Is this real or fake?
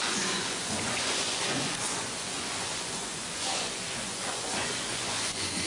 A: fake